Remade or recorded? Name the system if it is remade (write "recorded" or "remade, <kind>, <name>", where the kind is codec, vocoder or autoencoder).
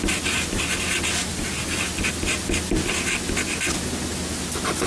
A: recorded